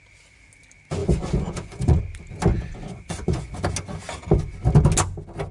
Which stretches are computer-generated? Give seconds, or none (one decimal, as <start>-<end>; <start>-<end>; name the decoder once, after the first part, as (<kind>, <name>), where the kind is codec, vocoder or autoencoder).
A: 1.0-2.0 (vocoder, Vocos); 2.5-3.5